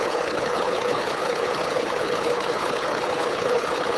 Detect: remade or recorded remade